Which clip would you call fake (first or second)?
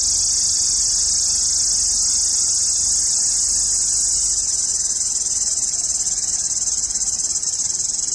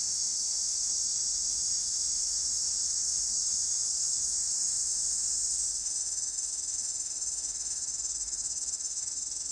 second